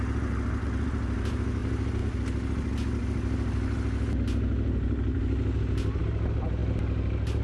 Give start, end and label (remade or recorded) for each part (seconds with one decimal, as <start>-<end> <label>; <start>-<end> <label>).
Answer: 0.0-7.4 recorded